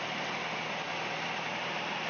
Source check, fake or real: real